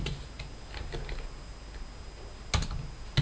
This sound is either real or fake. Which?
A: real